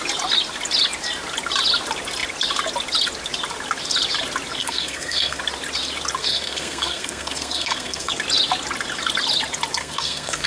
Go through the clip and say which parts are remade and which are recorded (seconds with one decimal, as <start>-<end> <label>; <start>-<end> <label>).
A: 0.0-4.6 recorded; 4.6-5.4 remade; 5.4-6.2 recorded; 6.2-8.1 remade; 8.1-9.8 recorded; 9.8-10.5 remade